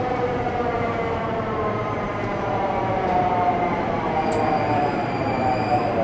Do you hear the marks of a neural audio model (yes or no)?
yes